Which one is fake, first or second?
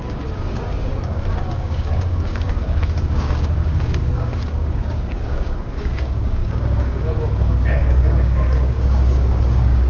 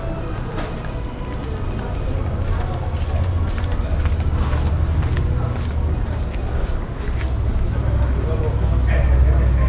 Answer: first